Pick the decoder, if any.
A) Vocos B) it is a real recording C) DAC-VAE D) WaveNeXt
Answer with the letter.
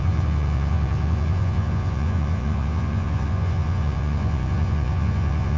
A